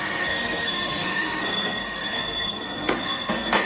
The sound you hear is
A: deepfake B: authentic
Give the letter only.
A